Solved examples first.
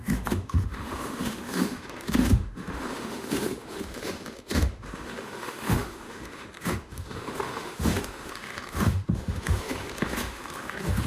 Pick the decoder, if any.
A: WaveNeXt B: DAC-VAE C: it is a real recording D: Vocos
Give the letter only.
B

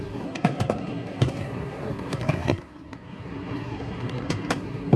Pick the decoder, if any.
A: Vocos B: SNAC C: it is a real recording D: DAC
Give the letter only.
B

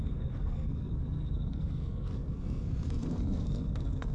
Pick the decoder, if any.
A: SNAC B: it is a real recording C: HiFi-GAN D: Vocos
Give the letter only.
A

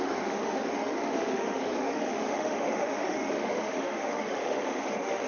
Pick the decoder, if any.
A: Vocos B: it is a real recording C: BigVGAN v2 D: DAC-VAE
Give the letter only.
D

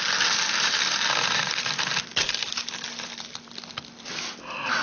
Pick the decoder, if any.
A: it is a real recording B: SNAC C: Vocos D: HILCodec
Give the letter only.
A